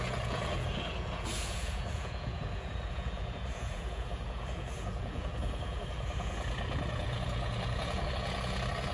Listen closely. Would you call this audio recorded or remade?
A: remade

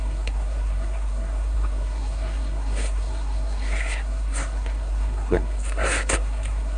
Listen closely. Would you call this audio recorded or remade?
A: remade